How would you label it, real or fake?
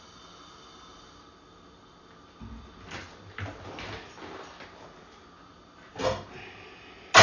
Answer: real